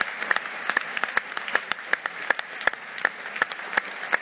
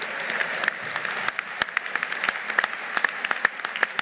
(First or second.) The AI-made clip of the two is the first